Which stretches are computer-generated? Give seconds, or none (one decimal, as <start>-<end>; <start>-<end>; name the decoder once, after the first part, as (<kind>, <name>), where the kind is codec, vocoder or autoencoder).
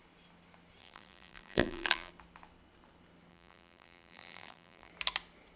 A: 0.8-2.1 (vocoder, BigVGAN v2); 3.3-4.9